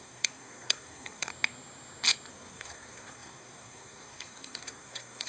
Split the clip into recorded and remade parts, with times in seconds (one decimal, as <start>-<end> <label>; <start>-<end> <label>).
0.0-1.3 remade; 1.3-2.3 recorded; 2.3-5.3 remade